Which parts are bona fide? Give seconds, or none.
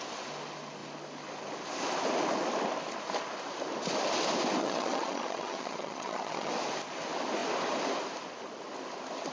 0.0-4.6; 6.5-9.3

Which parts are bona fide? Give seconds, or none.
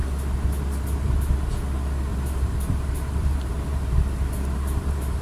0.0-2.1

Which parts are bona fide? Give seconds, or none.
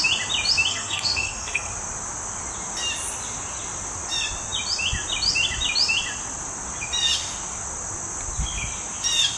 0.0-0.7; 1.7-9.4